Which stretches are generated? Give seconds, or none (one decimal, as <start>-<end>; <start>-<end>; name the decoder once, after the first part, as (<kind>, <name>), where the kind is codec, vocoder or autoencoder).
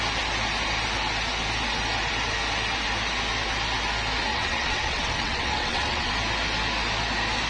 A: 4.3-6.1 (vocoder, WaveNeXt)